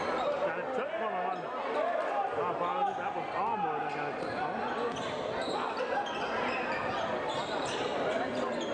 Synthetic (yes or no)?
no